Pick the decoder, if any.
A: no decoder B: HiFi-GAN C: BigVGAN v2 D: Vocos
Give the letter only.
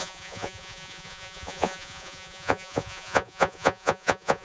D